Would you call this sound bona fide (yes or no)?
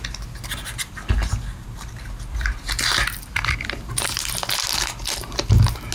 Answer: yes